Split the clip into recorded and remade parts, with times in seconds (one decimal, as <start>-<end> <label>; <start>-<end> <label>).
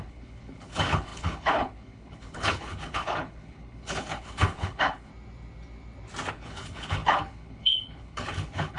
0.0-5.1 remade; 5.1-6.3 recorded; 6.3-8.8 remade